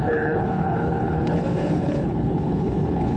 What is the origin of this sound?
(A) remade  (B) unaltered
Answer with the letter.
A